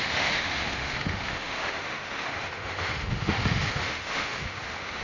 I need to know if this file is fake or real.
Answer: fake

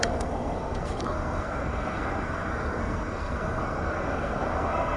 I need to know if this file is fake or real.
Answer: fake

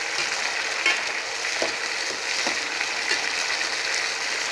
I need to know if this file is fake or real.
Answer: real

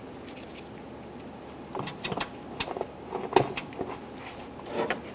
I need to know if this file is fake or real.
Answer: real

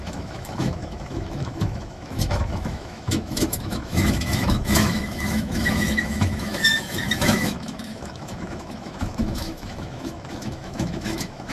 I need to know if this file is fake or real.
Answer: fake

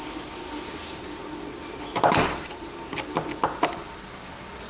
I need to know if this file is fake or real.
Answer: real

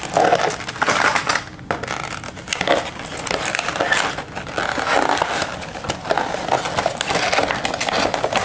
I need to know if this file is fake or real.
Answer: real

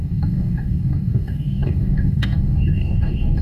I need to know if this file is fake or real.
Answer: fake